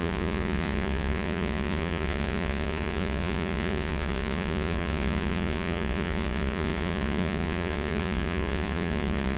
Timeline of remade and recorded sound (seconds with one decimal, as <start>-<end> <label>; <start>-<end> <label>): 0.0-9.4 remade